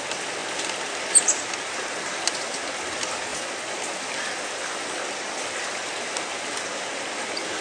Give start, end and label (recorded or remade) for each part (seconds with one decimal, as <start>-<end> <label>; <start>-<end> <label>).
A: 0.0-7.6 recorded